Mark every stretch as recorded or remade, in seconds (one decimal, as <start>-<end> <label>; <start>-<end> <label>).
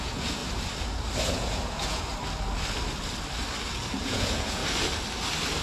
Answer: 0.0-0.4 remade; 0.4-1.3 recorded; 1.3-2.1 remade; 2.1-4.0 recorded; 4.0-4.6 remade; 4.6-5.6 recorded